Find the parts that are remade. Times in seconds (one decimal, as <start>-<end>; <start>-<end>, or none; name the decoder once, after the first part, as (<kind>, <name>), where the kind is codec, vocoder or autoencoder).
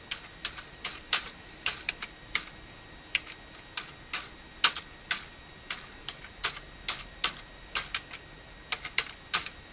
0.4-1.9 (vocoder, BigVGAN v2)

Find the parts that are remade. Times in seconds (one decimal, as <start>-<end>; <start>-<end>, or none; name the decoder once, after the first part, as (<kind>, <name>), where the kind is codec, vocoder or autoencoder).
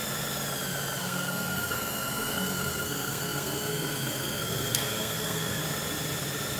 1.0-5.6 (codec, SNAC)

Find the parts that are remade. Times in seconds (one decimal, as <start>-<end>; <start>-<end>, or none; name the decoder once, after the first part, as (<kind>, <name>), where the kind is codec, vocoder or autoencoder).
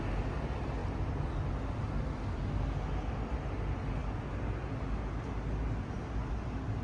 none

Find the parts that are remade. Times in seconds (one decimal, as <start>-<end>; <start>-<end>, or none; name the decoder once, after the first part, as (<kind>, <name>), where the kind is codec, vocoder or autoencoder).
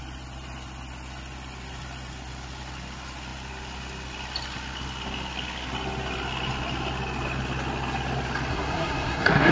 8.5-9.5 (codec, SNAC)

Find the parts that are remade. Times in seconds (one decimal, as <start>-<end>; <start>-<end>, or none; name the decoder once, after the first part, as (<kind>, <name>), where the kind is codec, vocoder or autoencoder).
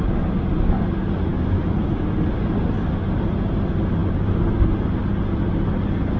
none